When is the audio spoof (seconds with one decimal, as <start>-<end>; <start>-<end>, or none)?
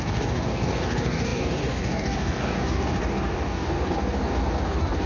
0.0-5.1